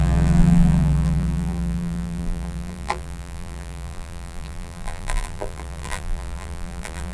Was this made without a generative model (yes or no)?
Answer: no